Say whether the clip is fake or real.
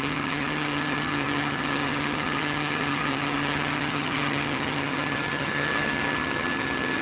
fake